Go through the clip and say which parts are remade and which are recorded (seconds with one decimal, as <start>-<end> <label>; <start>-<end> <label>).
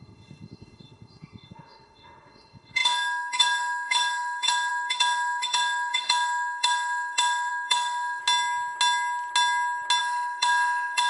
0.0-8.2 remade; 8.2-10.0 recorded; 10.0-11.1 remade